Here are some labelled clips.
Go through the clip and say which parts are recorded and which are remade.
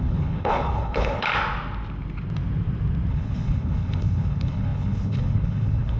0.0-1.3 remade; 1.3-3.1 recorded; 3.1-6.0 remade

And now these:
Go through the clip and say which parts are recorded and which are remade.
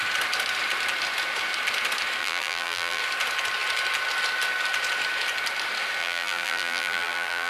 0.0-2.2 recorded; 2.2-3.0 remade; 3.0-6.0 recorded; 6.0-7.5 remade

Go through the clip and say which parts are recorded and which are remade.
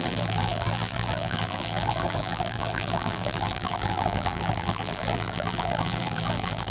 0.0-6.7 remade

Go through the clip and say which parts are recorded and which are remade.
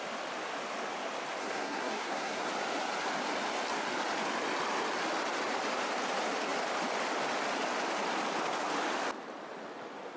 0.0-1.4 recorded; 1.4-2.5 remade; 2.5-10.2 recorded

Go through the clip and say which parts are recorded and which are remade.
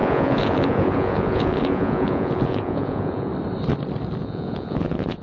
0.0-3.3 remade; 3.3-4.2 recorded; 4.2-5.2 remade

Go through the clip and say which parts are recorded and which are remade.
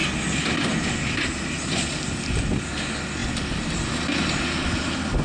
0.0-5.2 recorded